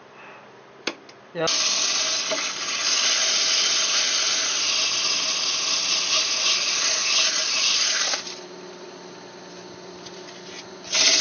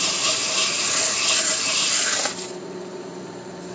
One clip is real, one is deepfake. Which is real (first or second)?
first